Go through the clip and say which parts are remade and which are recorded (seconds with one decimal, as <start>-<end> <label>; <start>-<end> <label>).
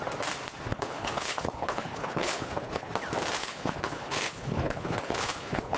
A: 0.0-0.7 recorded; 0.7-2.9 remade; 2.9-3.4 recorded; 3.4-5.8 remade